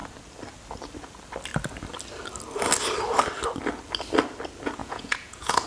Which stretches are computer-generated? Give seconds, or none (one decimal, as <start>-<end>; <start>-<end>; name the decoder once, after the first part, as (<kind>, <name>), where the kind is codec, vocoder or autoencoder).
4.8-5.7 (vocoder, Vocos)